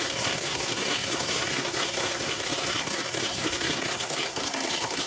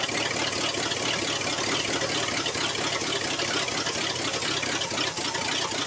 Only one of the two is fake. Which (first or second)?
first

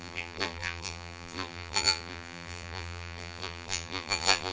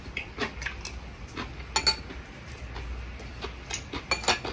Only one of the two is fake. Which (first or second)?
first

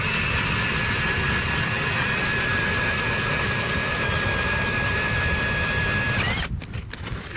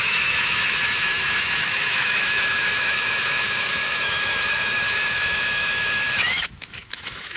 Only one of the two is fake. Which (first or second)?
second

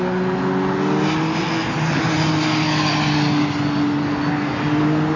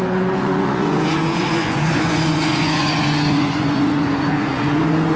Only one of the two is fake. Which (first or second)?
second